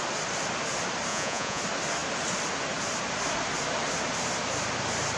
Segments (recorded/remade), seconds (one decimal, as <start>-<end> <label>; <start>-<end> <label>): 0.0-1.1 recorded; 1.1-1.6 remade; 1.6-5.2 recorded